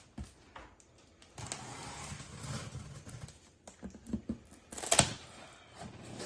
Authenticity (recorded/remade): recorded